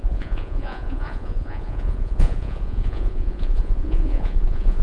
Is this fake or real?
fake